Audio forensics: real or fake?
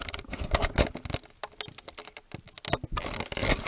real